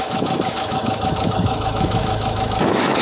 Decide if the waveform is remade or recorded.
remade